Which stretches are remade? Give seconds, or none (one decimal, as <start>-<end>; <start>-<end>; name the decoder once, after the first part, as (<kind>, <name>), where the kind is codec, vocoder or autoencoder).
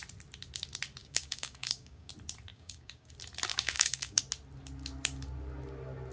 1.0-2.1 (codec, DAC); 2.5-3.1; 3.5-4.2